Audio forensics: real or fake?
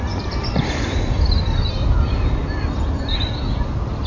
real